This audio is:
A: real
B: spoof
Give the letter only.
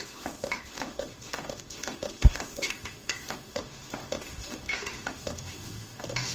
B